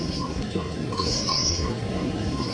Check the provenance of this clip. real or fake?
fake